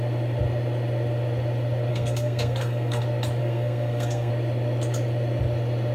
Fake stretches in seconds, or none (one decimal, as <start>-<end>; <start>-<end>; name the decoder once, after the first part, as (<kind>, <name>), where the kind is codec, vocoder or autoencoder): 1.9-3.0 (codec, SNAC); 3.4-4.3